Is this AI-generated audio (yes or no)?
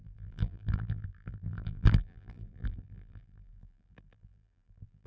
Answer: yes